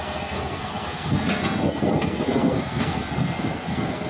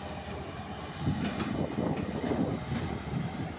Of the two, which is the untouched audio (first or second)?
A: second